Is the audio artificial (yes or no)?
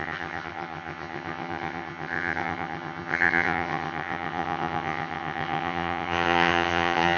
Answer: yes